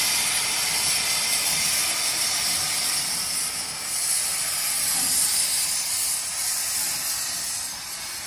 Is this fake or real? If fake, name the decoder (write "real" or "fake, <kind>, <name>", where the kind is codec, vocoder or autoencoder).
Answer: real